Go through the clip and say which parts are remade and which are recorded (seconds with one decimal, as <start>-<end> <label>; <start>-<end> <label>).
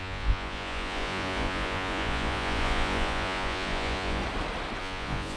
0.0-4.2 remade; 4.2-4.8 recorded; 4.8-5.4 remade